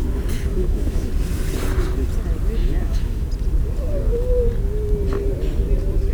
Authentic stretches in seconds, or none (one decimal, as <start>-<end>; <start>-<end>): 0.0-0.5; 1.1-2.6; 3.3-6.1